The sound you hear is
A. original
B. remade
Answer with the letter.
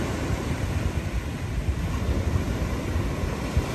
A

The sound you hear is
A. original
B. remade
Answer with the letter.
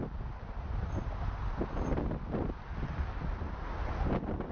A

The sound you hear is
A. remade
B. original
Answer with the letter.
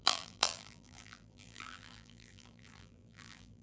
A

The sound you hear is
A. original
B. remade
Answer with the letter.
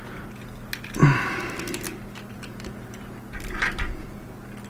A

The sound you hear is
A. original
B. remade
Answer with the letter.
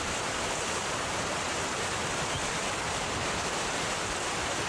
B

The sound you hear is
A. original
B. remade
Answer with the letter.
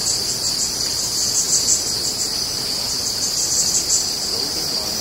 A